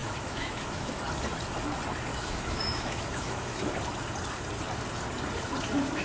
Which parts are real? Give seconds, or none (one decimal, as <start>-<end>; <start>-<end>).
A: 1.0-2.1; 3.7-6.0